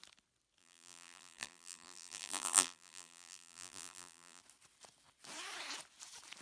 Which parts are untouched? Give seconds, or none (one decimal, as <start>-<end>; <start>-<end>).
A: 0.0-0.6; 4.4-6.4